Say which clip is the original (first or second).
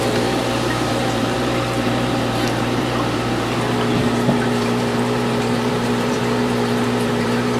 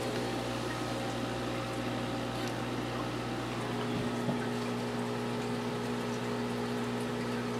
second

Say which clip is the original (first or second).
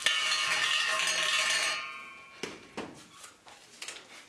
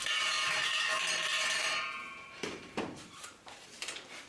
first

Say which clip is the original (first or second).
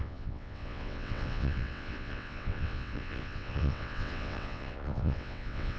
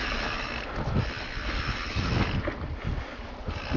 second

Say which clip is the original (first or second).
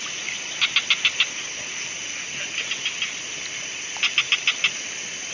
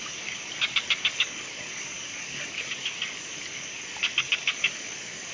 first